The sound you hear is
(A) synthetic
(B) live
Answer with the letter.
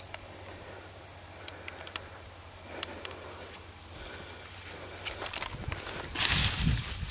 B